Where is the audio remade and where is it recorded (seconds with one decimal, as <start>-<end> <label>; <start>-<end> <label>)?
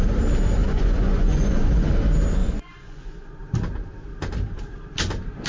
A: 0.0-0.6 recorded; 0.6-1.9 remade; 1.9-2.4 recorded; 2.4-3.4 remade; 3.4-5.5 recorded